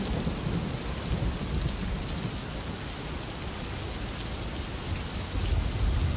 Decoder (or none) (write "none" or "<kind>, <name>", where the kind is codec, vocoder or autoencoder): none